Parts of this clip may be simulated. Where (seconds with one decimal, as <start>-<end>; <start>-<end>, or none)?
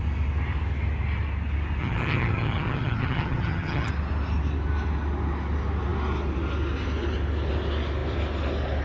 1.8-3.9